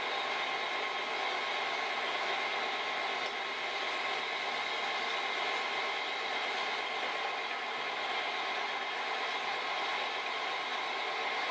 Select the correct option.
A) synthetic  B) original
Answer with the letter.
B